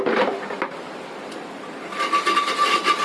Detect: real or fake real